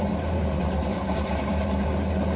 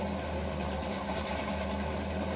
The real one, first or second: second